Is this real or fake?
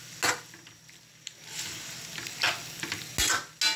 real